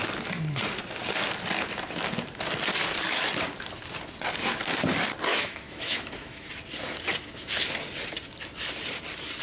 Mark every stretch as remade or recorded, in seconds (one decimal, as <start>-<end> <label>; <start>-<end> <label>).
0.0-5.3 recorded; 5.3-6.5 remade; 6.5-9.4 recorded